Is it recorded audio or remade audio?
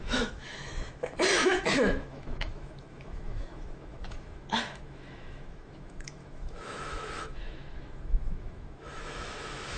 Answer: remade